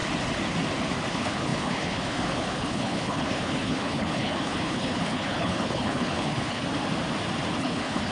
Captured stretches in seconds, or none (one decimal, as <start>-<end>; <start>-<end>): 0.0-1.1; 6.6-7.6